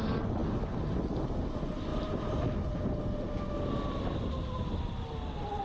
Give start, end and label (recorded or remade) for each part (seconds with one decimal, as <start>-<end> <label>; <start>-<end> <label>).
0.0-5.6 recorded